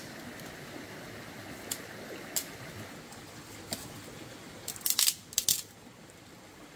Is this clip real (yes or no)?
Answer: yes